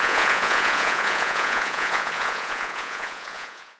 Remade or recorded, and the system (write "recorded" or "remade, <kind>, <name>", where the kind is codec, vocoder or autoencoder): remade, vocoder, Vocos